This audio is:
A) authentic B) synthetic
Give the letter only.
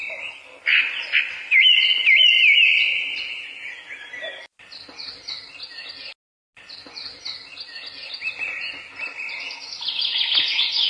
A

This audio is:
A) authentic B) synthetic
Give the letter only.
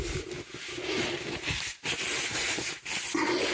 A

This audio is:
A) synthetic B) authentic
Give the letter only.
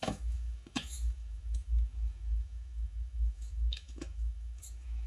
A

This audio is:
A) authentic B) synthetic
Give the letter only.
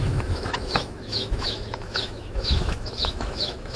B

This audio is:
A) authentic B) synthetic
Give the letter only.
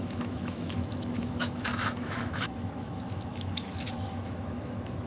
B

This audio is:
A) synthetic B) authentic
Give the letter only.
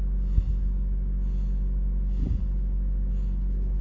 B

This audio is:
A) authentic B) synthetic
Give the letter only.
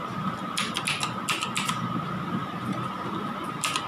A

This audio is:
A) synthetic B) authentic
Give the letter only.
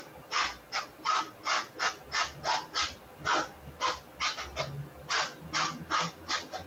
B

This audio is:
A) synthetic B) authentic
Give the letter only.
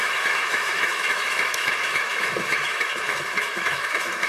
A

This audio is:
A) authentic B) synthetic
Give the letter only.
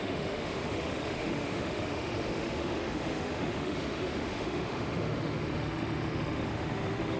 B